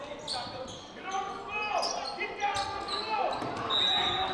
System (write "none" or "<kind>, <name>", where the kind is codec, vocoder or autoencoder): none